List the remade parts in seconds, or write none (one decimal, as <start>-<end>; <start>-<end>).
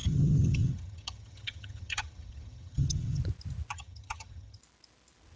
0.0-3.2; 3.7-4.6